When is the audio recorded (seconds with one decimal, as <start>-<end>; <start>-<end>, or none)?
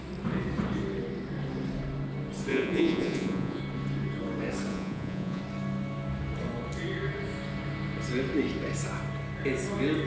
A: 0.0-2.5; 3.6-4.7; 5.4-10.1